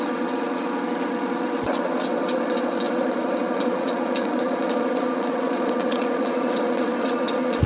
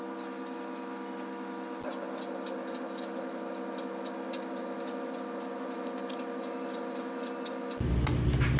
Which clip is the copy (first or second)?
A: first